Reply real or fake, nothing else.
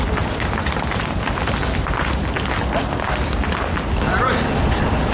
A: real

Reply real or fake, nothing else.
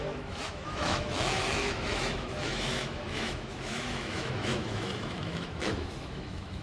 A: fake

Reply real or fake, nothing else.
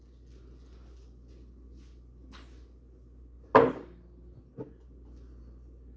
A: real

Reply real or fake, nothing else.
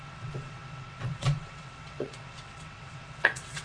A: fake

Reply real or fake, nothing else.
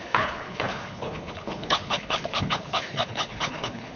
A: fake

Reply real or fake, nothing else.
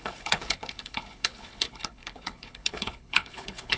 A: fake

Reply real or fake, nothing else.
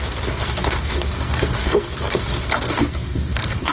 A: fake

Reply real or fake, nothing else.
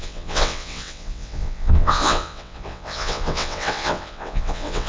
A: fake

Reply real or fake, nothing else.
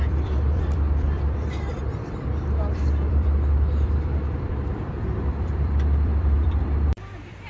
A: fake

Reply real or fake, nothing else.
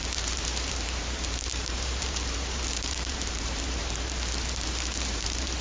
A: fake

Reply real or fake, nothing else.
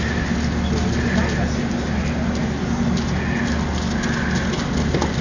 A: real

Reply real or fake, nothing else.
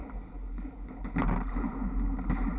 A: real